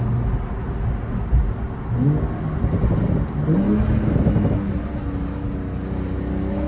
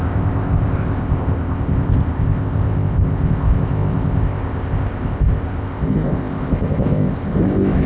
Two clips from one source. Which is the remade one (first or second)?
second